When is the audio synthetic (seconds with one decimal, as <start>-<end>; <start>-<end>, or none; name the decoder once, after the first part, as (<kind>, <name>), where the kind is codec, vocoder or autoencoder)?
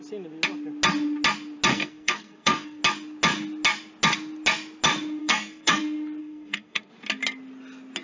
1.7-2.8 (codec, SNAC); 5.2-5.8; 6.2-6.9